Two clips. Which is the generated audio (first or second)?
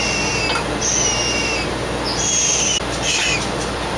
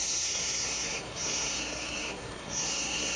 second